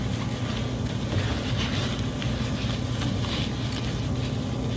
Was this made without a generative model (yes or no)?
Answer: yes